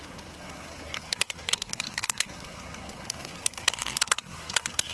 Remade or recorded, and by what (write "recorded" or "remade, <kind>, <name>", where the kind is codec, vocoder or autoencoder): remade, codec, SNAC